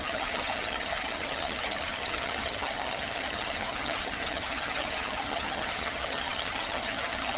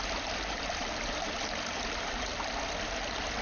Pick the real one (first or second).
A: second